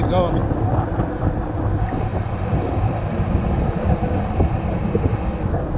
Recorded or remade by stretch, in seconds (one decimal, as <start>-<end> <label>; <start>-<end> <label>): 0.0-0.4 recorded; 0.4-1.6 remade; 1.6-5.8 recorded